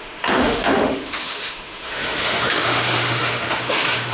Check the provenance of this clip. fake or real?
fake